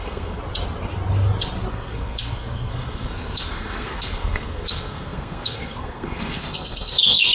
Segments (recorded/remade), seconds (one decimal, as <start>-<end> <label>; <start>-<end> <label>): 0.0-0.4 remade; 0.4-1.7 recorded; 1.7-7.3 remade